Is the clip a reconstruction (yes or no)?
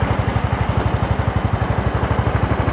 no